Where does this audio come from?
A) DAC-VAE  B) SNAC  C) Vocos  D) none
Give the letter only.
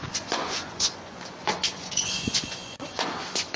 C